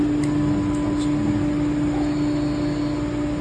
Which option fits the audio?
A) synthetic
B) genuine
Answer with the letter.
B